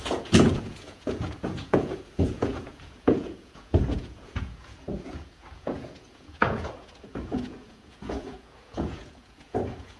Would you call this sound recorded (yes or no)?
no